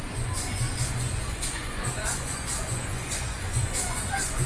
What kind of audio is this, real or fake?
fake